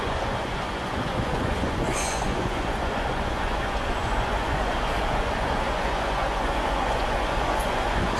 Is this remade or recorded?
remade